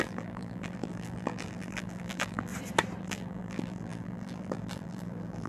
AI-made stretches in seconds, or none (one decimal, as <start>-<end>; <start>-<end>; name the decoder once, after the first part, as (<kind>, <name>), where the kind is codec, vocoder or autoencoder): 0.0-2.5 (vocoder, BigVGAN v2); 3.0-5.5